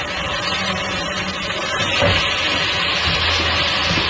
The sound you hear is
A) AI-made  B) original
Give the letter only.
B